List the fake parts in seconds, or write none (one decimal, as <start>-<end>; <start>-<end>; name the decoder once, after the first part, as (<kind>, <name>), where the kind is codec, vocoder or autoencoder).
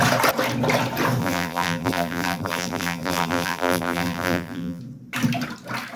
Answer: 1.2-4.8 (vocoder, BigVGAN v2)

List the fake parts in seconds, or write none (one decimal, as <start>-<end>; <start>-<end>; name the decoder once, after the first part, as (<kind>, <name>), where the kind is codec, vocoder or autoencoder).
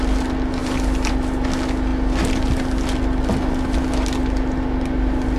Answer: none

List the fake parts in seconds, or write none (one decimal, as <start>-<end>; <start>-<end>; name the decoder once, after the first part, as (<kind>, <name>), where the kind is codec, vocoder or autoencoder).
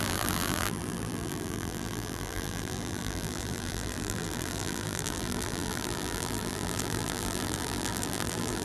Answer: 0.0-8.6 (vocoder, BigVGAN v2)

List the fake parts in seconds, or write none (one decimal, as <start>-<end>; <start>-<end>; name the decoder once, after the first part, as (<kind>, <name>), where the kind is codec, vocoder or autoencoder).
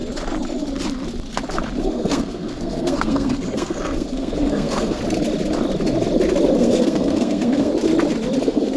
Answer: 1.8-5.0 (codec, SNAC); 6.6-7.7; 8.4-8.8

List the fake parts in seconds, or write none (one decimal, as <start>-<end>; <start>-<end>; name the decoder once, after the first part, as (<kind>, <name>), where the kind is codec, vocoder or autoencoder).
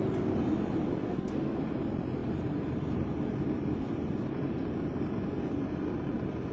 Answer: 1.0-1.6 (codec, SNAC)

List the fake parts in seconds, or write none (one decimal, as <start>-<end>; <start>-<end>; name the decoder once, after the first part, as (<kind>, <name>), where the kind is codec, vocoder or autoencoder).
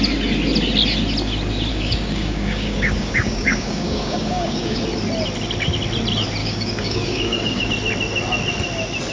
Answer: 1.7-4.8 (codec, DAC); 6.4-7.7